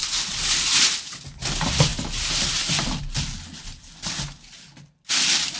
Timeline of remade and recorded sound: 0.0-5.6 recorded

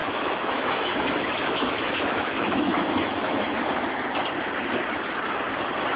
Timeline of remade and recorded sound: 0.0-3.6 remade; 3.6-6.0 recorded

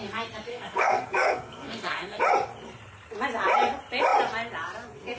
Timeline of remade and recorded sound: 0.0-0.5 recorded; 0.5-2.2 remade; 2.2-5.2 recorded

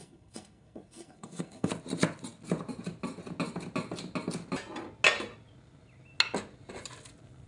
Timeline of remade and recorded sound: 0.0-1.7 remade; 1.7-7.5 recorded